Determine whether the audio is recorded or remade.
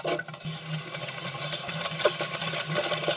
recorded